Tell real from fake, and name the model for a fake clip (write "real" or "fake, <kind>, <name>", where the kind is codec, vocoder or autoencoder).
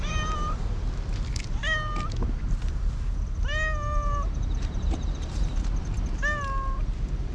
real